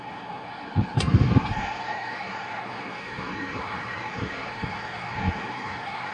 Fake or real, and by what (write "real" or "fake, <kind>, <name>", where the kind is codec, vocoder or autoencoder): fake, codec, SNAC